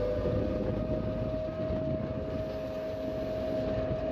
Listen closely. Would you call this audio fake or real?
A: real